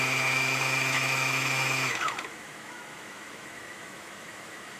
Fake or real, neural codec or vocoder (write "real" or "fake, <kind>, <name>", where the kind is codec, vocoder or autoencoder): fake, autoencoder, DAC-VAE